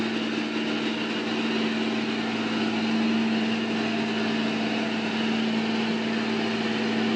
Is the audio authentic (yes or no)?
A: yes